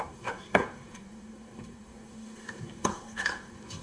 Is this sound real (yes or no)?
no